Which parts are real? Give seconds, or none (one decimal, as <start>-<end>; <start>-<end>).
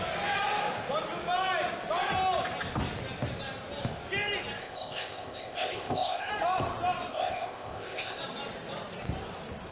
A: 0.0-4.6; 6.3-7.1; 8.2-9.7